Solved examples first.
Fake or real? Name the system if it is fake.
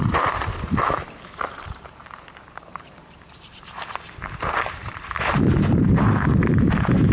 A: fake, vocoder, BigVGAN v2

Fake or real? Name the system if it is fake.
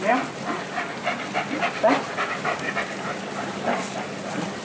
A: real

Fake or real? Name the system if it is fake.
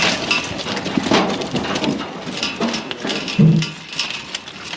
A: real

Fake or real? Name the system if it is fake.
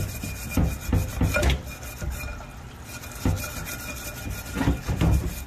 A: real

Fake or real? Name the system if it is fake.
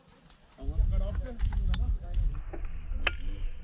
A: real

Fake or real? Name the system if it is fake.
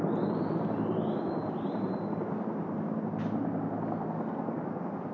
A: real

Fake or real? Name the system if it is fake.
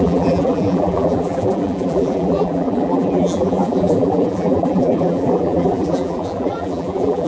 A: fake, vocoder, BigVGAN v2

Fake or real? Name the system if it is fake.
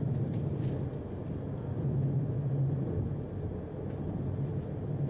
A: fake, vocoder, BigVGAN v2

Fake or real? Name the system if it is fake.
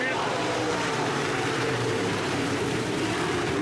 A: fake, vocoder, BigVGAN v2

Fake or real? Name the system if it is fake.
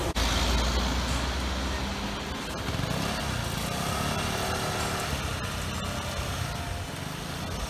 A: real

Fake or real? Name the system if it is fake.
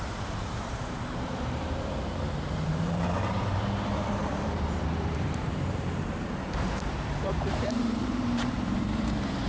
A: fake, vocoder, BigVGAN v2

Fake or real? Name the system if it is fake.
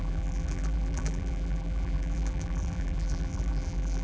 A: fake, vocoder, BigVGAN v2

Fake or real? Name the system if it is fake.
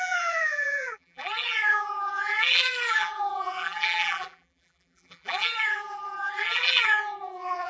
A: fake, vocoder, BigVGAN v2